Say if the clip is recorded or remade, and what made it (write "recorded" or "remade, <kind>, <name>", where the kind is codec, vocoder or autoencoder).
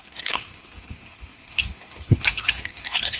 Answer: remade, codec, SNAC